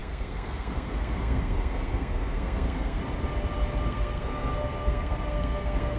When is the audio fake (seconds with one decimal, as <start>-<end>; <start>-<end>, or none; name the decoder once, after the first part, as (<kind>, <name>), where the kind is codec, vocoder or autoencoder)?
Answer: 0.0-3.0 (codec, SNAC); 3.9-6.0